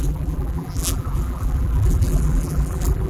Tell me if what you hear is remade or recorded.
remade